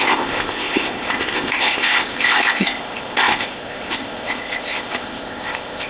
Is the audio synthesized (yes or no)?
yes